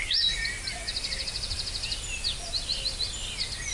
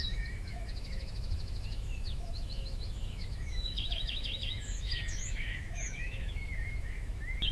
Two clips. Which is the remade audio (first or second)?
second